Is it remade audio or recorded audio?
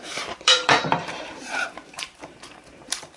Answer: remade